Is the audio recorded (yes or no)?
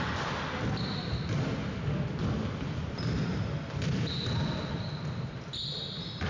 yes